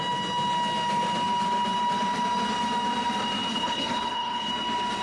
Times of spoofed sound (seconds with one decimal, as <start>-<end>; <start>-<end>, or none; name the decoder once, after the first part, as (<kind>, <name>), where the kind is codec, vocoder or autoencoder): 3.5-4.5 (codec, HILCodec)